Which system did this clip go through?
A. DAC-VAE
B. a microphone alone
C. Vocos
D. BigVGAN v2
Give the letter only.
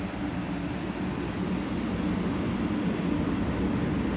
B